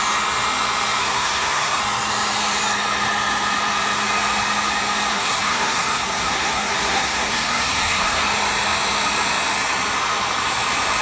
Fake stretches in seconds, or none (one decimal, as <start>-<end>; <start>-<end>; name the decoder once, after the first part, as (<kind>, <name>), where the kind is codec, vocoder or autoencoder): 1.0-1.8 (codec, SNAC); 5.1-8.2